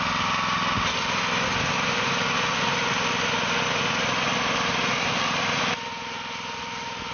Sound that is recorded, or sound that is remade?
recorded